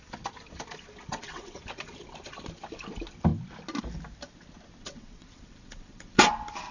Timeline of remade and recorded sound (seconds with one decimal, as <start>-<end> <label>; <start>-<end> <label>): 0.0-1.1 recorded; 1.1-1.6 remade; 1.6-4.8 recorded; 4.8-6.3 remade; 6.3-6.7 recorded